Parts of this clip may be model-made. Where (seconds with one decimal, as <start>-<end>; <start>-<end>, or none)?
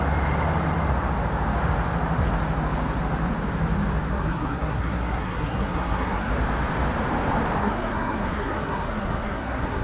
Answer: 4.1-6.3; 7.6-9.8